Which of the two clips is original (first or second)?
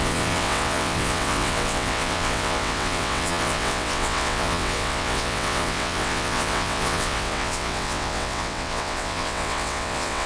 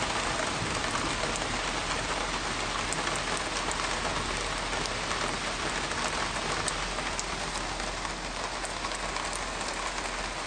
second